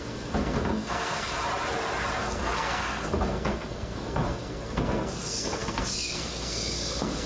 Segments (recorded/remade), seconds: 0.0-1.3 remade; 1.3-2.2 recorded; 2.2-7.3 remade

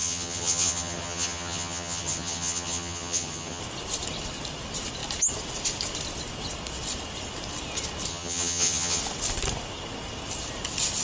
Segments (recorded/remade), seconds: 0.0-3.6 remade; 3.6-8.1 recorded; 8.1-9.0 remade; 9.0-11.0 recorded

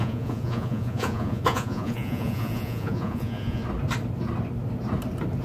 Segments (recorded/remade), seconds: 0.0-3.6 remade; 3.6-5.4 recorded

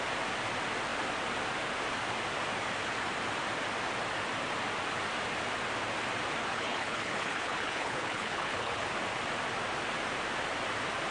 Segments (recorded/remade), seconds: 0.0-6.4 recorded; 6.4-8.9 remade; 8.9-11.1 recorded

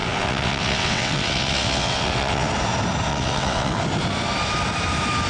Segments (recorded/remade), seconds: 0.0-2.5 remade; 2.5-3.1 recorded; 3.1-3.8 remade; 3.8-5.3 recorded

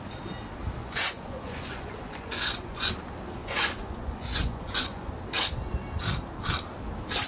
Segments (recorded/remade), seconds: 0.0-0.8 recorded; 0.8-2.9 remade; 2.9-3.4 recorded; 3.4-5.1 remade; 5.1-7.3 recorded

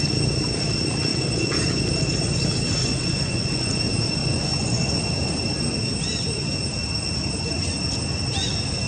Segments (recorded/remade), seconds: 0.0-1.1 recorded; 1.1-1.8 remade; 1.8-2.8 recorded; 2.8-3.8 remade; 3.8-4.2 recorded; 4.2-5.0 remade; 5.0-8.9 recorded